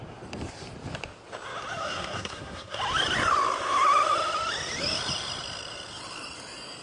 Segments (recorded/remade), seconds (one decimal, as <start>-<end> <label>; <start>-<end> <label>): 0.0-1.8 recorded; 1.8-2.8 remade; 2.8-6.8 recorded